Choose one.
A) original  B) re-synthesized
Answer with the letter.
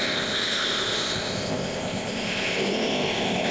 B